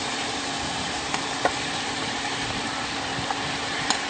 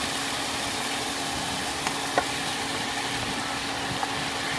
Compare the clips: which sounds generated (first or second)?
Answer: first